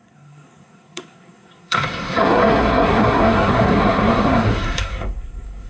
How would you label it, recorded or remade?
remade